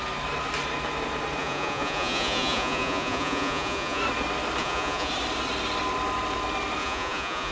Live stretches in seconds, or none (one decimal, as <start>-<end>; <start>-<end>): 0.0-1.4; 4.0-4.6; 5.1-6.8